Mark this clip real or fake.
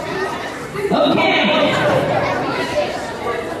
fake